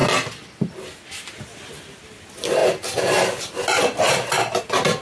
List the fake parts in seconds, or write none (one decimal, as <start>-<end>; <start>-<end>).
none